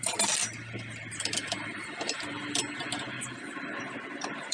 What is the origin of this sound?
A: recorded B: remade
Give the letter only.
B